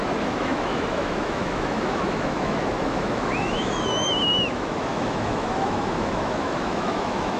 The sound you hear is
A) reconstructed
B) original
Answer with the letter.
A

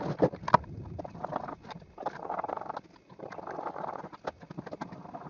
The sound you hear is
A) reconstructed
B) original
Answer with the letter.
B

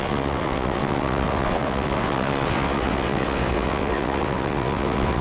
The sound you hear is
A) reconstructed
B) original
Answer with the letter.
A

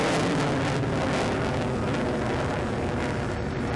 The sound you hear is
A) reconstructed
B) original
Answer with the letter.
B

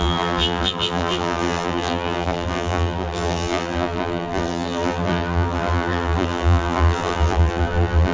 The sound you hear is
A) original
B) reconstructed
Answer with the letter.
B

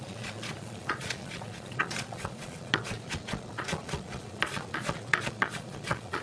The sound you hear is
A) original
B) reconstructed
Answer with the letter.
B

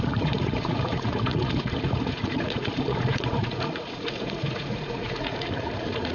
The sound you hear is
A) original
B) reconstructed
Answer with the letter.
B